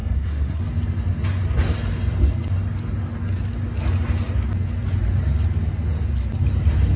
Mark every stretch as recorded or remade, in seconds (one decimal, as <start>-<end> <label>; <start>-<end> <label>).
0.0-0.6 remade; 0.6-7.0 recorded